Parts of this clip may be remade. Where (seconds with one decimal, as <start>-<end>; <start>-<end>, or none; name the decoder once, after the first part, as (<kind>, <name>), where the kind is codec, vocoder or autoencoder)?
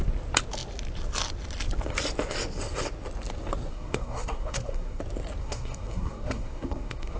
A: 3.7-5.0 (codec, SNAC); 5.4-7.2